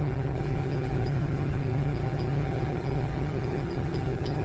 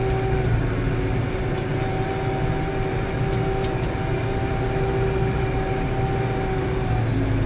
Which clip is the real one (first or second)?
second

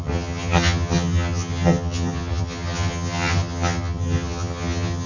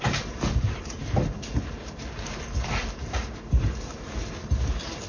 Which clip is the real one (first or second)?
second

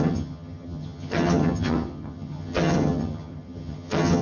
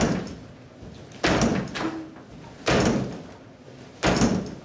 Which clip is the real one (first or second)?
second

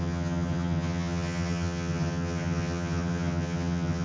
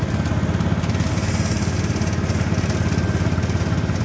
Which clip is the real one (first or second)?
second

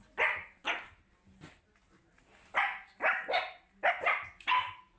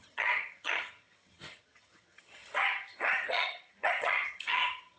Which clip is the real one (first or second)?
first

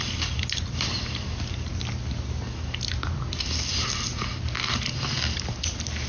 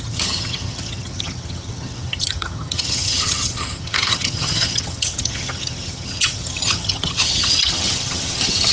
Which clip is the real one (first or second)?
first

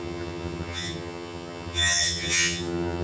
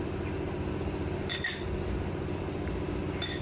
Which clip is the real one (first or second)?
second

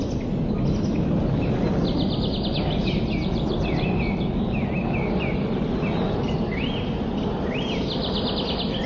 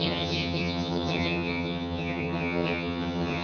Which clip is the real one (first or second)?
first